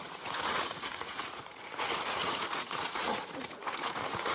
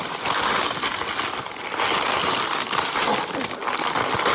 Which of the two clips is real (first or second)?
second